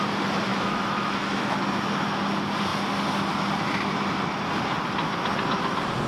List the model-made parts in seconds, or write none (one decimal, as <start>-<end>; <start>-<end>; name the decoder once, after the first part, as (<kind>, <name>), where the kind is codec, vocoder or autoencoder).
0.5-1.6 (autoencoder, DAC-VAE)